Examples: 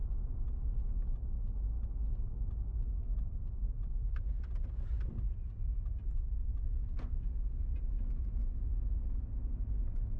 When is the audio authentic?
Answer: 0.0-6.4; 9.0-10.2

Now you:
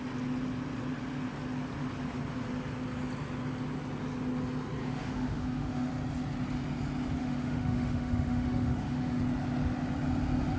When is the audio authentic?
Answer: 0.0-4.8; 5.9-7.2; 9.2-10.6

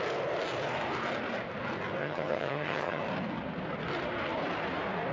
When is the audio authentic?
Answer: 0.0-2.0; 3.0-5.1

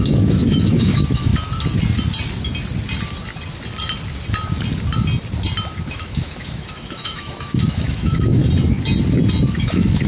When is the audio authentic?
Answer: 1.3-5.9; 8.4-9.5

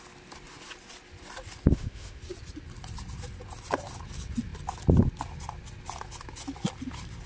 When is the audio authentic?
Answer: 0.0-1.7; 2.2-7.3

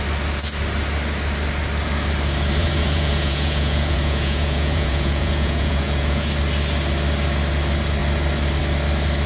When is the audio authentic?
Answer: 0.0-2.6; 6.3-9.3

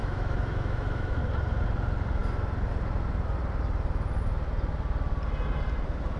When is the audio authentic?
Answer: 1.2-6.2